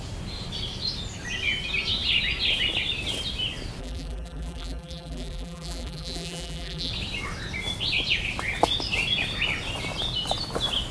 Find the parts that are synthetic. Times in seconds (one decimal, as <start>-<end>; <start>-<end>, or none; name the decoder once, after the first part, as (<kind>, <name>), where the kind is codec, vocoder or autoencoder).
3.8-6.9 (vocoder, BigVGAN v2)